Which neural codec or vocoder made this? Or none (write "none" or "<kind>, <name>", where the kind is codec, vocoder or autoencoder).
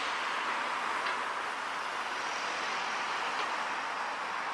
none